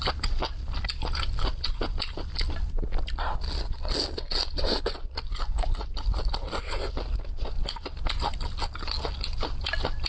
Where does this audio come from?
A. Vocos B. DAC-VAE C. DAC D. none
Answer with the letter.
D